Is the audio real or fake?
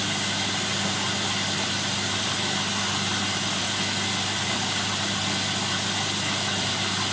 real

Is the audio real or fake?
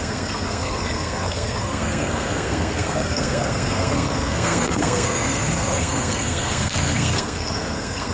fake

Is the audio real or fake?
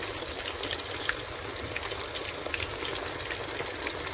real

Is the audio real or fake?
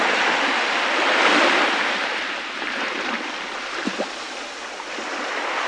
real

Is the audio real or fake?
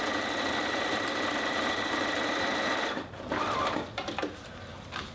real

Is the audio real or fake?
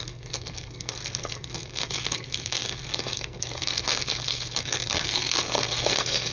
fake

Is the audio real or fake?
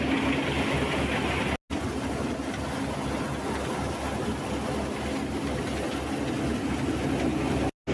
real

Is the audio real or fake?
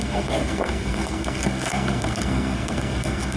fake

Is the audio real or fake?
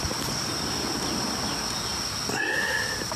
real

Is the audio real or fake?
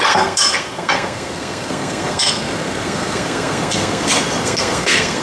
fake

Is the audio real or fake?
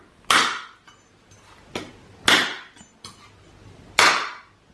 real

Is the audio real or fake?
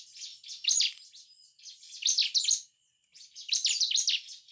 real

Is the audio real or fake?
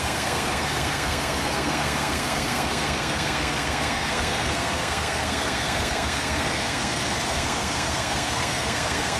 fake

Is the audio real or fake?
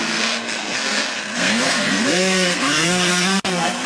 fake